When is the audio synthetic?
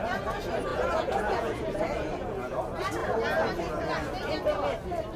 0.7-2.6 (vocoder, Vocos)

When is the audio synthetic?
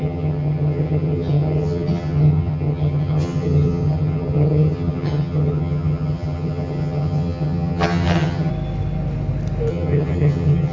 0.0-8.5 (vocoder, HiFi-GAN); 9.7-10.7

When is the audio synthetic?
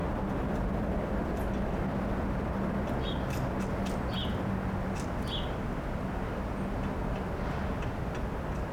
0.0-3.6 (vocoder, BigVGAN v2)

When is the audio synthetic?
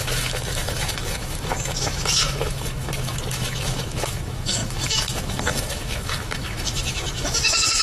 0.0-7.8 (autoencoder, DAC-VAE)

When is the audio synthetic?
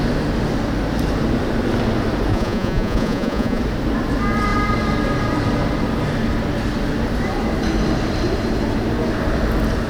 2.3-3.6 (vocoder, Vocos)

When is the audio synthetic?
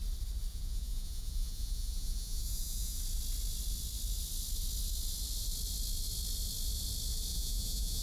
0.5-3.0 (vocoder, Vocos); 7.3-8.0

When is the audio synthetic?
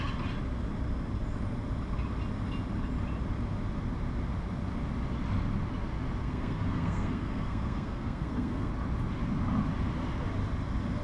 6.2-8.7 (codec, SNAC)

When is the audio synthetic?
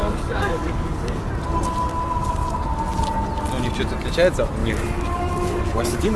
0.0-1.2 (codec, DAC); 4.6-6.2